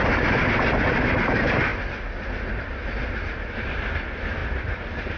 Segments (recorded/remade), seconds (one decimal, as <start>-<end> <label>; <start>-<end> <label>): 0.0-1.7 remade; 1.7-2.5 recorded; 2.5-5.2 remade